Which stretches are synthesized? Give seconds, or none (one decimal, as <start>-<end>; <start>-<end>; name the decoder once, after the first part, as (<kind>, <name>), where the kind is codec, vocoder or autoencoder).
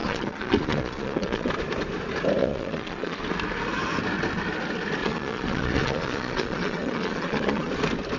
0.0-1.5 (vocoder, Vocos); 2.4-3.2; 5.0-7.7